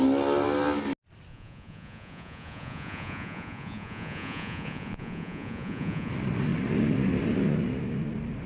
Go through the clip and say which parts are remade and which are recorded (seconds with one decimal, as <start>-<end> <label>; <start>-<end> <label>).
0.0-1.3 recorded; 1.3-6.1 remade; 6.1-8.5 recorded